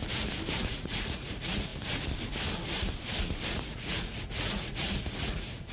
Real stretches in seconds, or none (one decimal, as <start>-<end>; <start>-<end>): 0.0-0.6; 1.7-3.5